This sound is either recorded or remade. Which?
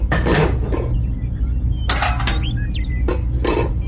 recorded